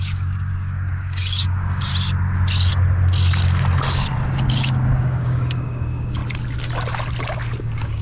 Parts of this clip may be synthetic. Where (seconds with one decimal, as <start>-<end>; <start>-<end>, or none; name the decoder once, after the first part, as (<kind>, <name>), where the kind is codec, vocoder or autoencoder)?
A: 0.0-1.9 (codec, DAC); 4.5-6.2; 7.6-8.0